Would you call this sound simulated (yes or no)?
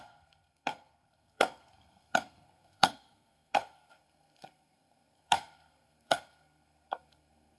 yes